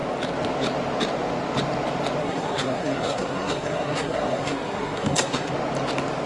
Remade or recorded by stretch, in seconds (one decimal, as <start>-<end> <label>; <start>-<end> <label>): 0.0-2.2 recorded; 2.2-5.5 remade; 5.5-6.3 recorded

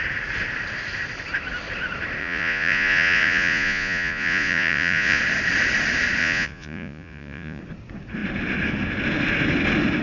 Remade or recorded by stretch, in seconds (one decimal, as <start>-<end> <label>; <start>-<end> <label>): 0.0-2.2 recorded; 2.2-5.2 remade; 5.2-6.2 recorded; 6.2-7.6 remade; 7.6-10.0 recorded

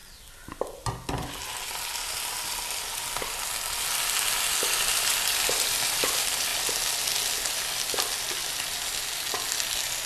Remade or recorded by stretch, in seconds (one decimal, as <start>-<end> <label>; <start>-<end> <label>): 0.0-4.8 recorded; 4.8-6.5 remade; 6.5-10.1 recorded

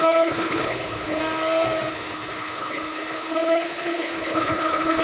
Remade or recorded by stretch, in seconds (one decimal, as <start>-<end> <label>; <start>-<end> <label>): 0.0-1.2 remade; 1.2-1.9 recorded; 1.9-5.0 remade

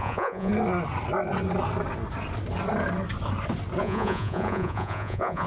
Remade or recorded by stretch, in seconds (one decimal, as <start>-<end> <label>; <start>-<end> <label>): 0.0-0.5 remade; 0.5-3.8 recorded; 3.8-5.5 remade

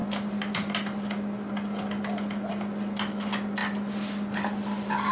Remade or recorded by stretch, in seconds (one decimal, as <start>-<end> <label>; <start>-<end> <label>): 0.0-5.1 recorded

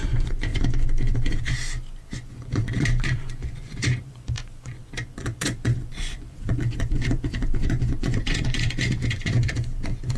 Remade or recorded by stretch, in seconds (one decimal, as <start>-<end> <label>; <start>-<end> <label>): 0.0-10.2 remade

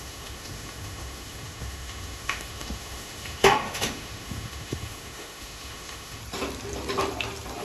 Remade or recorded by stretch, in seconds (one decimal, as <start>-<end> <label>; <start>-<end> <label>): 0.0-6.2 remade; 6.2-7.6 recorded